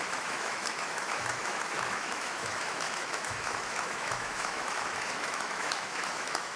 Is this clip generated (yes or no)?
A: yes